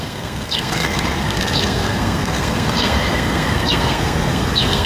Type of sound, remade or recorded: remade